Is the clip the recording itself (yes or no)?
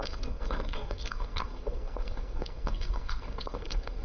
no